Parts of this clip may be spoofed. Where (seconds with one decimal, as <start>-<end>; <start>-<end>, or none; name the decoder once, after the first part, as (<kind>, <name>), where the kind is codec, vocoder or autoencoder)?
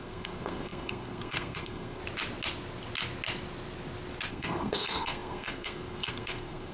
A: 0.0-2.0 (codec, SNAC); 4.3-6.7